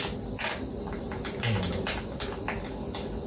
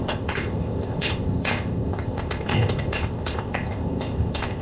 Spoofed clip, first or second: second